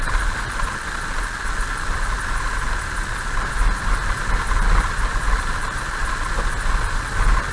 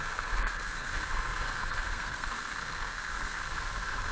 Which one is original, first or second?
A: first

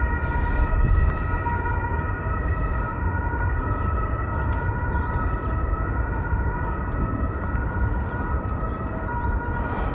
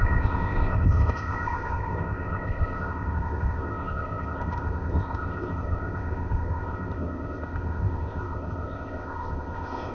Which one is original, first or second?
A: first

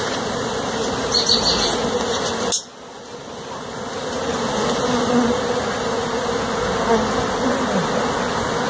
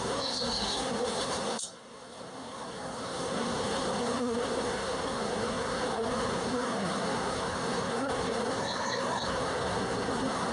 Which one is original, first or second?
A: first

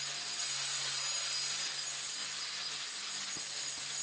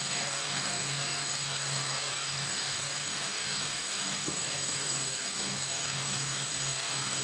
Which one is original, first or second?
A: first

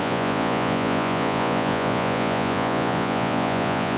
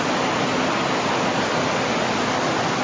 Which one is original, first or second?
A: second